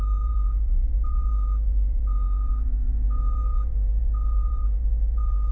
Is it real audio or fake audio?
fake